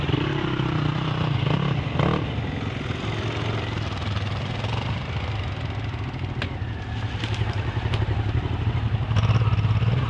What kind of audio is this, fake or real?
real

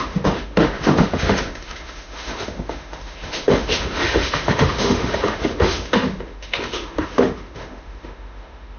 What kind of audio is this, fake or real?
fake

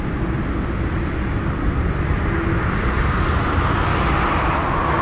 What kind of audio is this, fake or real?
real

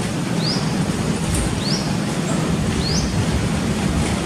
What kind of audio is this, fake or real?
real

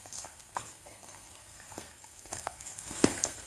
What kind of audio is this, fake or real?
fake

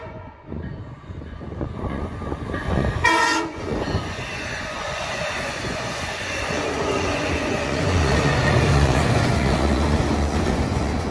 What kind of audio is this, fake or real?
fake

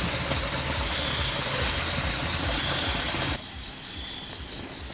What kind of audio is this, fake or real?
real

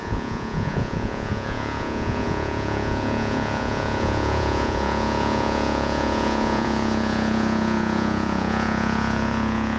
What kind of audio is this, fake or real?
fake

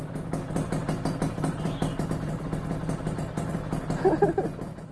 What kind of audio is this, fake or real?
real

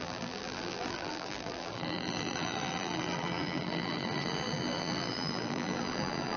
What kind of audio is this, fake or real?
fake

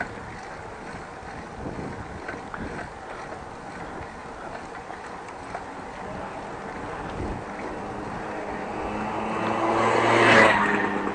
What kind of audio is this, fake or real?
real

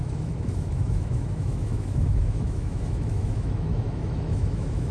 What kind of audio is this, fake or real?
fake